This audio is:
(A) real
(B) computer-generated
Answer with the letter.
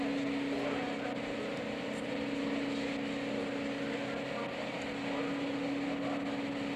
A